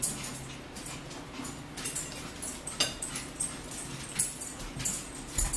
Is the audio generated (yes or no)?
no